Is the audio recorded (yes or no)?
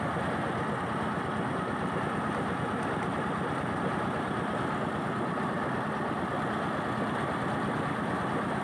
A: yes